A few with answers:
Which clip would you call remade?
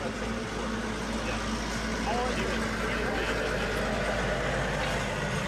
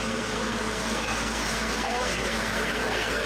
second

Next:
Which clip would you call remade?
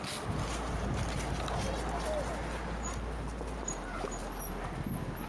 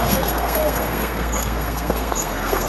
second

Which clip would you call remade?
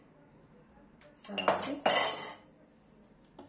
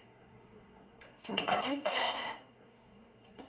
second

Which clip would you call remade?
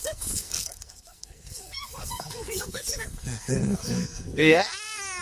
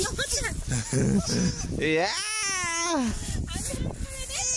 first